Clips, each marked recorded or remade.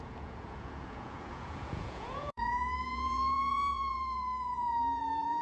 remade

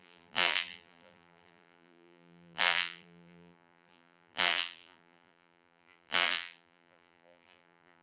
remade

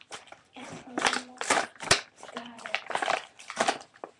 remade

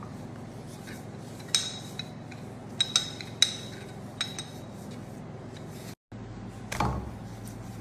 recorded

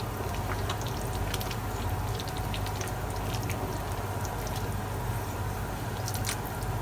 recorded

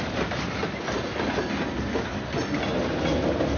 recorded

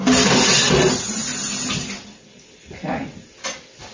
recorded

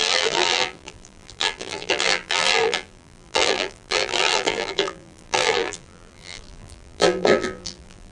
remade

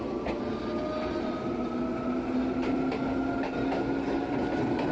recorded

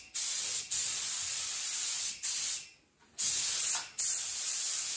recorded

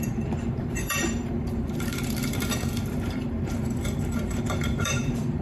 remade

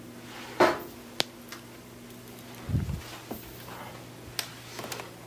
recorded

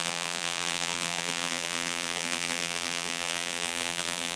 remade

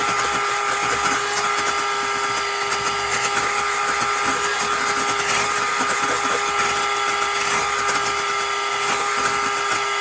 recorded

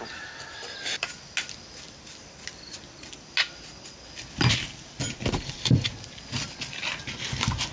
recorded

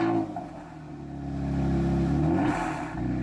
recorded